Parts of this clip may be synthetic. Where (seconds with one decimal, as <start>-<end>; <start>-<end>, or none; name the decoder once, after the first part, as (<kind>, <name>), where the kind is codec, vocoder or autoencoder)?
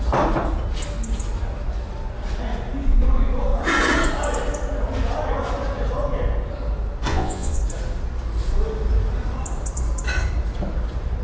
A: 7.1-7.6 (vocoder, Vocos)